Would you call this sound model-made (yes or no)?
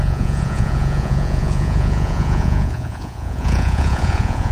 yes